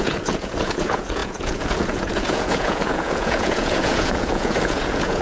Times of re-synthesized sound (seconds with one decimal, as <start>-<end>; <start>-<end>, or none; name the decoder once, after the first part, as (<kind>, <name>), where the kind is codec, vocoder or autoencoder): 0.0-5.2 (vocoder, Vocos)

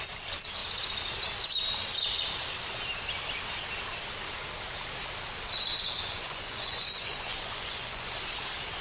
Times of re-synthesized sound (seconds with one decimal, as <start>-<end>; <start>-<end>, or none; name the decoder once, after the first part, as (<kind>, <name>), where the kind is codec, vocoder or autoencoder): 6.1-8.1 (vocoder, Vocos)

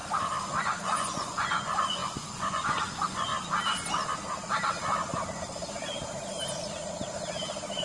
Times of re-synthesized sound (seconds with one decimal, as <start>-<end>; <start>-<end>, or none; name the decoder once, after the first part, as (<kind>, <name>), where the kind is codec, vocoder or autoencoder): 0.6-3.3 (vocoder, Vocos)

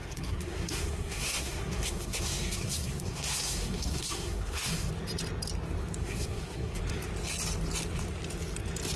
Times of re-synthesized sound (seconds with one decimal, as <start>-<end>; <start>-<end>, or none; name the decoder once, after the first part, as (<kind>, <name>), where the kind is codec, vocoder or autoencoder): 0.0-4.9 (codec, SNAC); 6.0-6.8

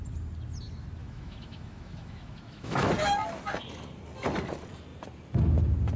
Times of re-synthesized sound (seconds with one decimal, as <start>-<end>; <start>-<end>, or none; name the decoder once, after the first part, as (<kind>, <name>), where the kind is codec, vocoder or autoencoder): 1.0-2.9 (autoencoder, DAC-VAE)

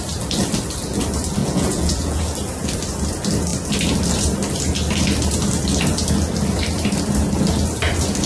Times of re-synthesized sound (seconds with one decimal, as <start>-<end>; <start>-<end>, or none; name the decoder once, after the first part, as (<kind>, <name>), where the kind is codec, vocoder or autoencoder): 1.4-2.2 (vocoder, Vocos)

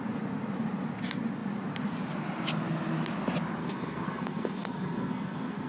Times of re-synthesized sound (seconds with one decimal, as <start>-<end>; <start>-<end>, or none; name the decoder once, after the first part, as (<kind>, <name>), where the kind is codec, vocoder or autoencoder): 3.6-5.7 (codec, SNAC)

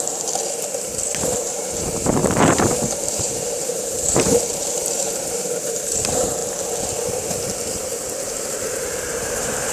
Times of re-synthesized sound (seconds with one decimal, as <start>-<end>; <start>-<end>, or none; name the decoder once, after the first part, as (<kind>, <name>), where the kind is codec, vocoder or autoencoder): 0.0-6.4 (vocoder, BigVGAN v2); 7.7-9.7